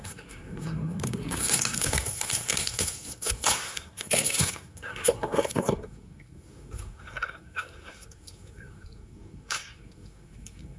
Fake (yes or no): yes